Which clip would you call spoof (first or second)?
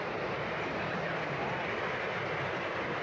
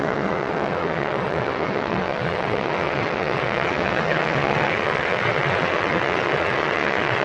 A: second